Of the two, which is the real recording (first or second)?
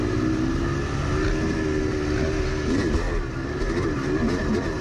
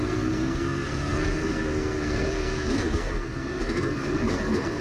first